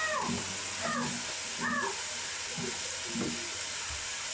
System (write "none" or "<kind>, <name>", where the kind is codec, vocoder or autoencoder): none